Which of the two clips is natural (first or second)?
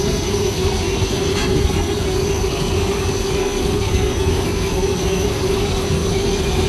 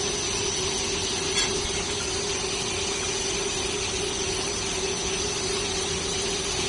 second